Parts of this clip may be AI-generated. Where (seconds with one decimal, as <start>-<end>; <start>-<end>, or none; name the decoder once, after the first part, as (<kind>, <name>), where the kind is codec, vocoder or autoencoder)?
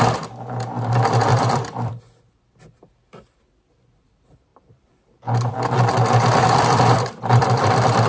1.3-2.0 (vocoder, BigVGAN v2); 4.5-5.5; 6.4-8.1